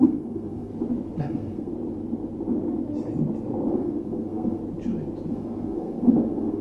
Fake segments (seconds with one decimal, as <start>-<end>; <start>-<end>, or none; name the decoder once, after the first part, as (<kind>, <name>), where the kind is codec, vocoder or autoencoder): 0.0-0.7 (codec, SNAC); 1.2-1.7; 3.7-4.6; 5.3-6.6